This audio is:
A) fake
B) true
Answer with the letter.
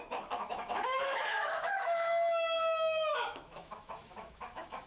A